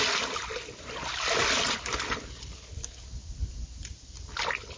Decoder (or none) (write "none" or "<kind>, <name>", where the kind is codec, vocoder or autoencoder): none